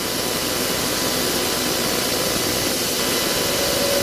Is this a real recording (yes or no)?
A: yes